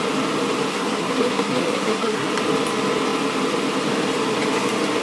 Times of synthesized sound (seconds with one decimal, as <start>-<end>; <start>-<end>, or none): 0.7-2.3